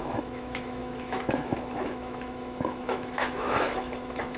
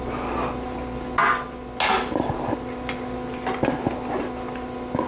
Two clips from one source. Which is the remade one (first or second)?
first